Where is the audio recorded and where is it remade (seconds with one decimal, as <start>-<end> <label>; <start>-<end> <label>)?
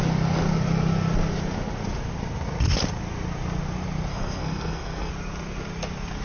0.0-4.1 recorded; 4.1-5.1 remade; 5.1-6.2 recorded